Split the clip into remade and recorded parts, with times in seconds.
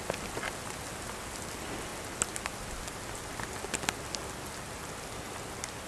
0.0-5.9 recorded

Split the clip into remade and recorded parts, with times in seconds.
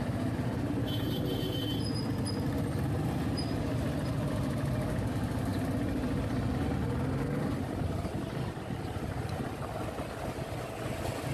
0.0-11.3 recorded